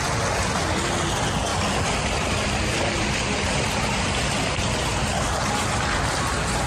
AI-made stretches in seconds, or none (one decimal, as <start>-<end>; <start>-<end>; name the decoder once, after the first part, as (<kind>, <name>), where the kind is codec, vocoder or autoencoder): 1.5-5.5 (vocoder, BigVGAN v2)